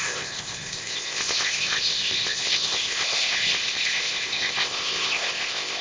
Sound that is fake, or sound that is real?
fake